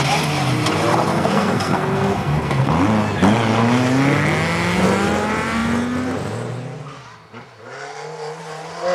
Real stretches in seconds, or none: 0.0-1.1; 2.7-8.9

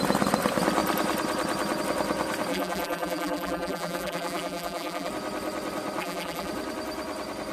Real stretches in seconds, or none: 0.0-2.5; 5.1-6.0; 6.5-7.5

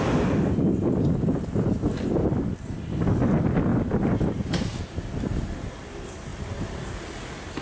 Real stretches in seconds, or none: 0.0-3.7; 4.8-7.6

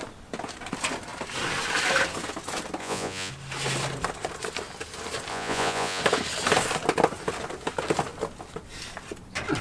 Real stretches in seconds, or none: 0.0-2.8; 3.3-5.3; 6.0-9.6

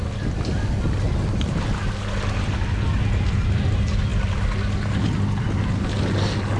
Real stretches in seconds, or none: 0.0-6.6